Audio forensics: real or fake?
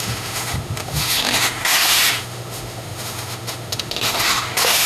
fake